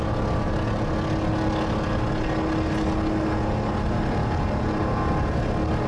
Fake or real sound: real